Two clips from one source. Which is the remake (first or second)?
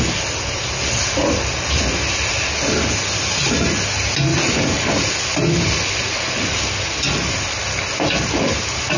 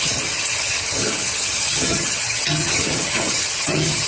second